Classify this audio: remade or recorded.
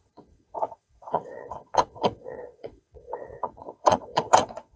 remade